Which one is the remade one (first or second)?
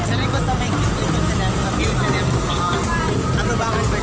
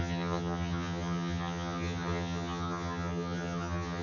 second